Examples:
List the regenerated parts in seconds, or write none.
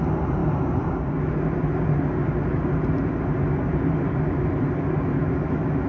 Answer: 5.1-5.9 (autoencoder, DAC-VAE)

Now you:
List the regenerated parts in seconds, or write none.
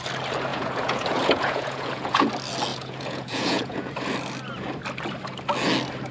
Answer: 0.5-2.3 (vocoder, Vocos); 2.7-3.9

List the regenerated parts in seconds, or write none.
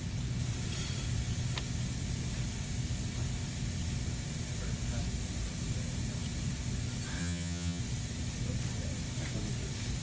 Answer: 7.2-7.8 (vocoder, HiFi-GAN)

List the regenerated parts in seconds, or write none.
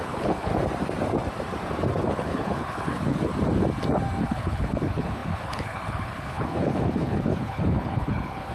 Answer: 0.0-0.5 (codec, HILCodec); 2.0-3.3; 4.2-8.5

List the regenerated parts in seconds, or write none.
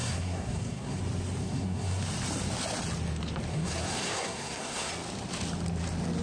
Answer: 0.0-1.0 (codec, SNAC); 1.4-2.0; 3.5-4.9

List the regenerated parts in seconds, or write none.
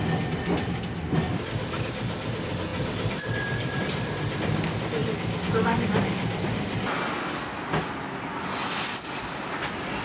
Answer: none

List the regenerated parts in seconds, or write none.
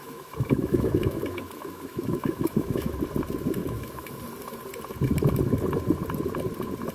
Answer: 0.0-2.9 (autoencoder, DAC-VAE); 3.6-4.2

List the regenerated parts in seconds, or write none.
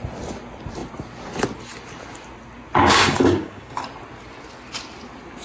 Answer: 2.8-3.8 (codec, DAC)